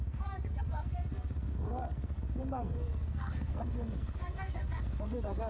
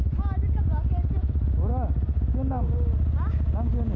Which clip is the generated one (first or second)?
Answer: first